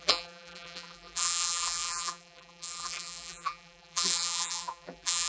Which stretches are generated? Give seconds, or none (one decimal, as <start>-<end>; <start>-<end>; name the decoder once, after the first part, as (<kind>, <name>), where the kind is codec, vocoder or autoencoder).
0.0-5.3 (vocoder, BigVGAN v2)